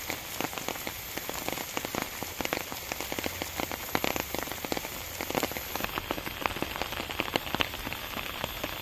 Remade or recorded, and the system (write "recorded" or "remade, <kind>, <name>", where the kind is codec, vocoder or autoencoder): recorded